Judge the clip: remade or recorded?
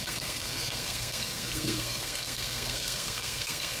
remade